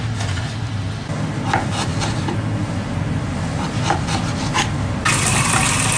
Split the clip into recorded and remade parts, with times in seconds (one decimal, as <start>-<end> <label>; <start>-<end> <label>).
0.0-6.0 recorded